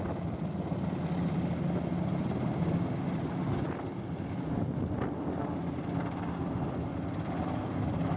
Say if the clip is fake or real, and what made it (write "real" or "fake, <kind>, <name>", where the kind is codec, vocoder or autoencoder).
real